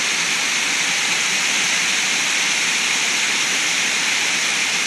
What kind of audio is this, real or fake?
fake